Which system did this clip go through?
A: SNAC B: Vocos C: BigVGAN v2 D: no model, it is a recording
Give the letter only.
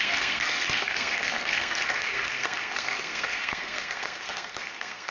A